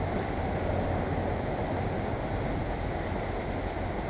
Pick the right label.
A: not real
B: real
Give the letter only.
B